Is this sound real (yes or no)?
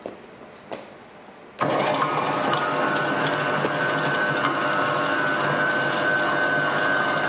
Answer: yes